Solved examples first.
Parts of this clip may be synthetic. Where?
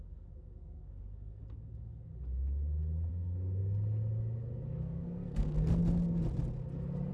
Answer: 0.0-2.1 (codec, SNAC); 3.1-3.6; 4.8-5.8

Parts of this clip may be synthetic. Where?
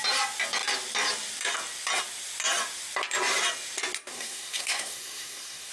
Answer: 4.1-5.7 (codec, SNAC)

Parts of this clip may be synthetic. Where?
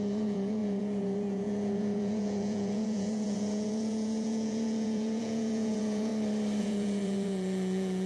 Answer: 0.0-6.1 (vocoder, Vocos); 6.6-8.1